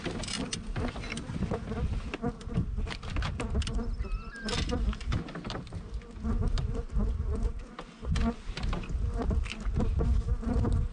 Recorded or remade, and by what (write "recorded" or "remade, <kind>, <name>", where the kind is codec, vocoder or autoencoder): recorded